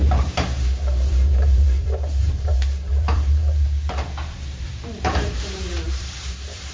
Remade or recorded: remade